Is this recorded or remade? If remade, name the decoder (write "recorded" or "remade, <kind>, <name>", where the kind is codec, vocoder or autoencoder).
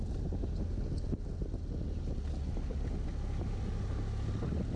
recorded